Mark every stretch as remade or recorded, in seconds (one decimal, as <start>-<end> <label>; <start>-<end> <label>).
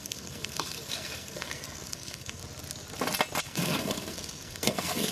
0.0-2.4 remade; 2.4-3.4 recorded; 3.4-5.1 remade